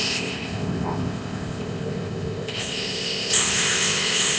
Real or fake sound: fake